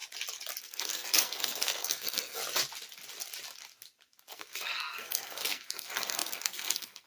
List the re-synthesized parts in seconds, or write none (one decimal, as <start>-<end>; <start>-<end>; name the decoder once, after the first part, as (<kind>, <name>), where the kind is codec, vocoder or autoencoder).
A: 0.6-2.4 (codec, SNAC); 4.3-7.1